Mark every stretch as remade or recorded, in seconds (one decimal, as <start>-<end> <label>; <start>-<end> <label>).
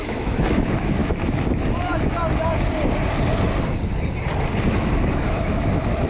0.0-1.0 remade; 1.0-4.7 recorded; 4.7-6.1 remade